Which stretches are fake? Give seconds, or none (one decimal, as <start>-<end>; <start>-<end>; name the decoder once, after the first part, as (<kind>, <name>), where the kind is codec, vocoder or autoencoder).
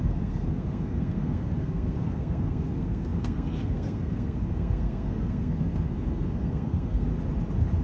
0.0-7.1 (codec, SNAC)